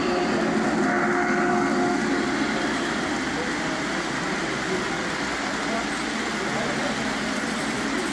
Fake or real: real